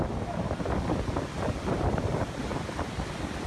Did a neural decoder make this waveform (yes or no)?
no